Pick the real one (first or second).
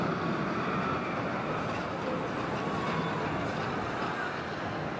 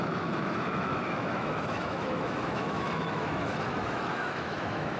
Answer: first